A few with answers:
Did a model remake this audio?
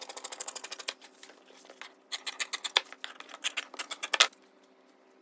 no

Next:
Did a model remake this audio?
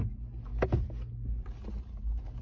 no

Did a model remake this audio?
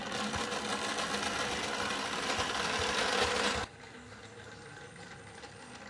no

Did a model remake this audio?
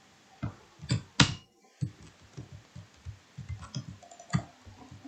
no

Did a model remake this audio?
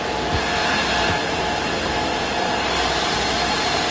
no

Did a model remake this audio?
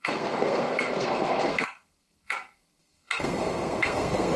yes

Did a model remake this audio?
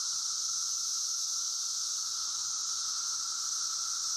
no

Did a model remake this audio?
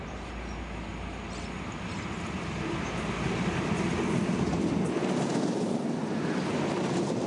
no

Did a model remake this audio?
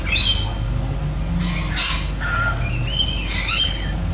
no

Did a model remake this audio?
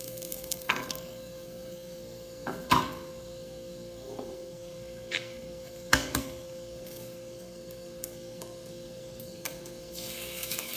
yes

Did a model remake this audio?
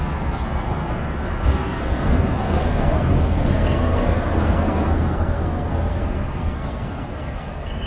yes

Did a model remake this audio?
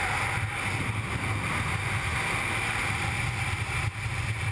no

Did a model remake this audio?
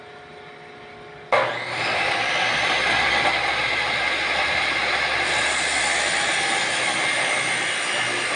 no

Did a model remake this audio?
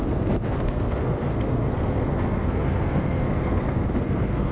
yes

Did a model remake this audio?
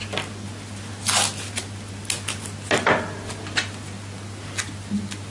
no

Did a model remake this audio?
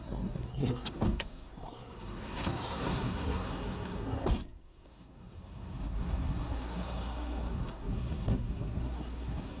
yes